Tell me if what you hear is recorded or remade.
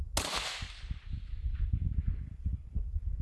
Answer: recorded